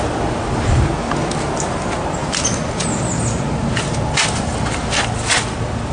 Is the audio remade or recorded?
recorded